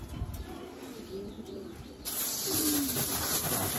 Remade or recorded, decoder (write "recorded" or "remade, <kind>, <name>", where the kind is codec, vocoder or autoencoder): recorded